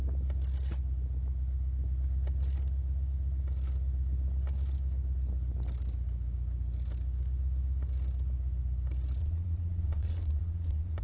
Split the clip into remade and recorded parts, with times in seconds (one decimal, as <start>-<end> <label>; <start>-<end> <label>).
0.0-9.2 recorded; 9.2-11.0 remade